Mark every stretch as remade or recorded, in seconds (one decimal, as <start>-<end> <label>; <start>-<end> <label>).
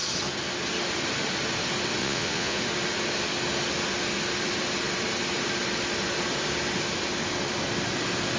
0.0-2.0 recorded; 2.0-2.6 remade; 2.6-8.4 recorded